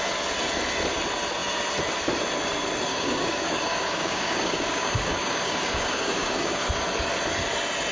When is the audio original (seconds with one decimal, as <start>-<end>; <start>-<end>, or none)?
0.0-2.9; 6.6-7.9